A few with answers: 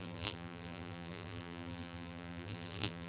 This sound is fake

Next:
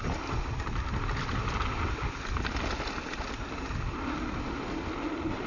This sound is real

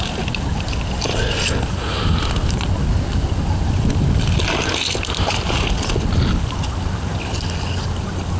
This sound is real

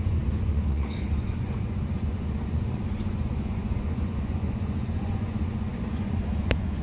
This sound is fake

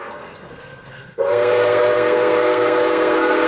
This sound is fake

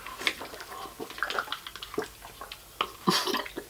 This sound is real